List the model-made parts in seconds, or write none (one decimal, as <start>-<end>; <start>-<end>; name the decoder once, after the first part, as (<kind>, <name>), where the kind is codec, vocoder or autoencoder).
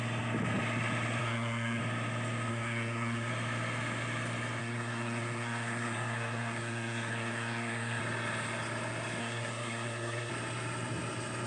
1.2-1.8 (codec, SNAC); 2.5-3.3; 4.6-8.0; 9.2-10.3